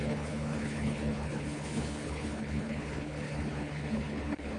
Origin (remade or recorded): remade